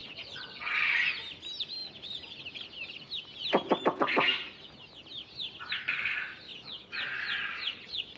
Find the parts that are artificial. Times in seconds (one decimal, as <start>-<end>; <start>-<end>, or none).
0.0-0.8; 6.5-8.2